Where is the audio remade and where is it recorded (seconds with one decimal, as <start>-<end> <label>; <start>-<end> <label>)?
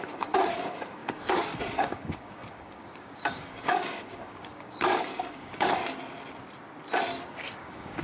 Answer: 0.0-5.8 remade; 5.8-7.2 recorded; 7.2-8.0 remade